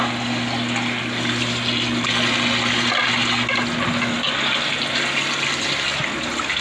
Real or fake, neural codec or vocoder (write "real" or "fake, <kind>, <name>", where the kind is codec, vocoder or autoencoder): real